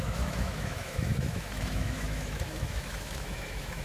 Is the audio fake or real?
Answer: fake